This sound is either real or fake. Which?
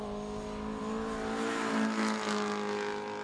real